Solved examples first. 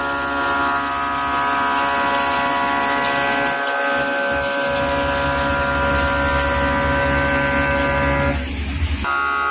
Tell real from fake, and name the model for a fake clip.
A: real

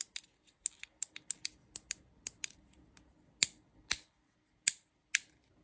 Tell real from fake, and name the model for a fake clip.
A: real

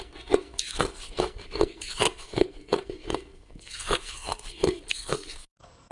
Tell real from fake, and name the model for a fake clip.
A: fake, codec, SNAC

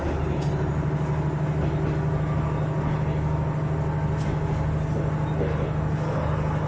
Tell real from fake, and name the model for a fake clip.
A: real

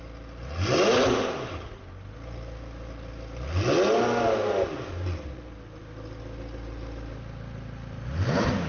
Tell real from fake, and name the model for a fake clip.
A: real